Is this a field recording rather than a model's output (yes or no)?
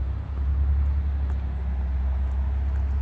yes